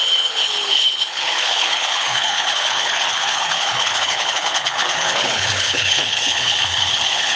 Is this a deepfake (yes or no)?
yes